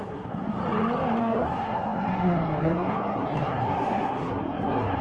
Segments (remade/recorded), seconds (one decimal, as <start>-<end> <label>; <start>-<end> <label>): 0.0-0.6 remade; 0.6-1.2 recorded; 1.2-5.0 remade